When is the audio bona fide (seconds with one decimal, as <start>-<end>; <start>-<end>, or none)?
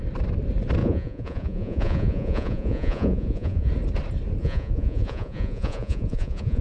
0.0-0.8; 3.7-4.4